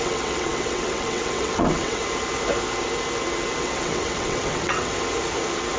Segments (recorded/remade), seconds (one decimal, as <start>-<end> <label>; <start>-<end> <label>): 0.0-2.0 remade; 2.0-3.6 recorded; 3.6-4.9 remade; 4.9-5.8 recorded